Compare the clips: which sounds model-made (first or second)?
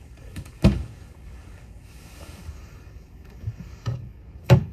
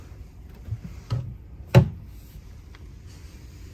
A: first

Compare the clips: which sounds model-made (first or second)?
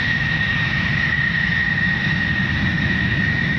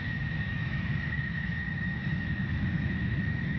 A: second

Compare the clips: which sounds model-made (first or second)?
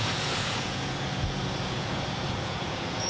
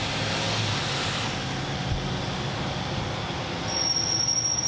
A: first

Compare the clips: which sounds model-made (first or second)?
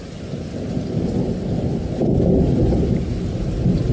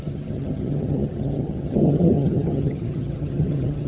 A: second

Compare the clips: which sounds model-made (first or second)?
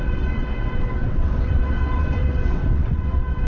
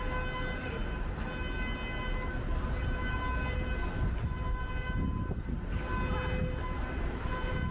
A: first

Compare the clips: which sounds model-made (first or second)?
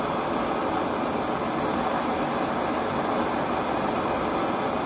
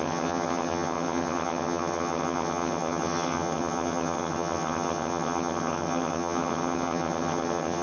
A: second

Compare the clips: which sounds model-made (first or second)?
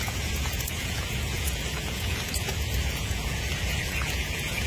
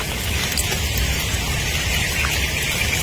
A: first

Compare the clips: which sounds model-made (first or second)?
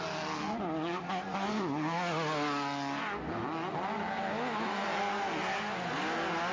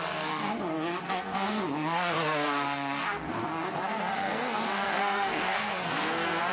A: second